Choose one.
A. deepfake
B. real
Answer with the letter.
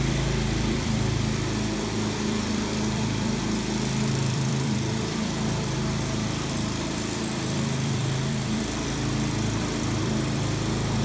A